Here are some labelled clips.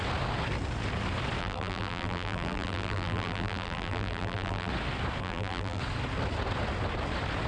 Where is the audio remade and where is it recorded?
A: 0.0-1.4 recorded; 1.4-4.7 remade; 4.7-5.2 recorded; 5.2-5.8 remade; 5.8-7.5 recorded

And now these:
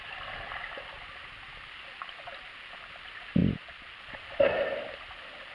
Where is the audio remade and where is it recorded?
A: 0.0-5.5 recorded

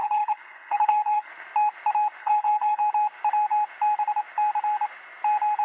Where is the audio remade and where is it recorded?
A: 0.0-1.3 remade; 1.3-2.2 recorded; 2.2-2.8 remade; 2.8-5.6 recorded